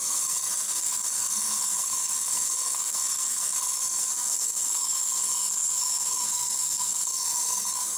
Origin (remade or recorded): remade